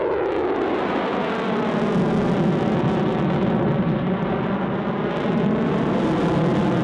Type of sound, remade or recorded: recorded